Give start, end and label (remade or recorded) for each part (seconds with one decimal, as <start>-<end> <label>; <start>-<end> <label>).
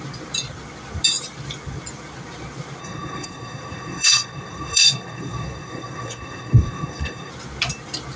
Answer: 0.0-2.8 recorded; 2.8-7.3 remade; 7.3-8.2 recorded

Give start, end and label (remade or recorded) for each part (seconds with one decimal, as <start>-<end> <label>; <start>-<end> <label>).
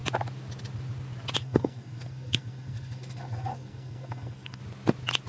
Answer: 0.0-1.4 recorded; 1.4-4.6 remade; 4.6-5.3 recorded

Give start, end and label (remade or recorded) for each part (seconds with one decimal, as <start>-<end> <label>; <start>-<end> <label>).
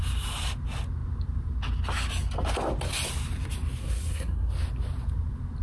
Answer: 0.0-3.8 recorded; 3.8-4.5 remade; 4.5-5.6 recorded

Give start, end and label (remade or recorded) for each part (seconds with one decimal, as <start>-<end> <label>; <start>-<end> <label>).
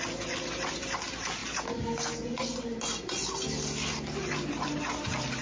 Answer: 0.0-5.4 recorded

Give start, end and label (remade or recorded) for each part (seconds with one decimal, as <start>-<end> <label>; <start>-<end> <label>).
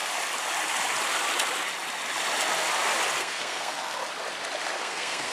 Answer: 0.0-3.2 recorded; 3.2-4.0 remade; 4.0-4.8 recorded; 4.8-5.3 remade